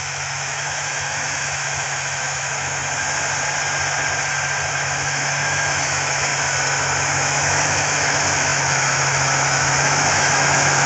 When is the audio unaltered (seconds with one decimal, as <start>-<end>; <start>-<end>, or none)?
2.8-4.7; 6.3-7.2